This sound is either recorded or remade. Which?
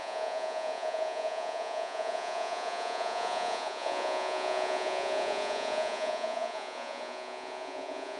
remade